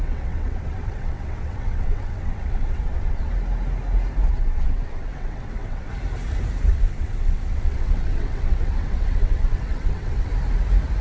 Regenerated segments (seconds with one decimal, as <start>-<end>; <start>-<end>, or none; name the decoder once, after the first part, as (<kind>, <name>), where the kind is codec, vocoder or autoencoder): 0.0-3.3 (vocoder, WaveNeXt); 4.3-5.9; 6.7-10.3